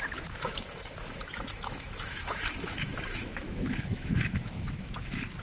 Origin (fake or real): fake